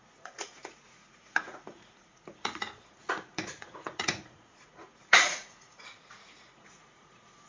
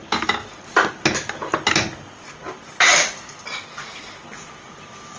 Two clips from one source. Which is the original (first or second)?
second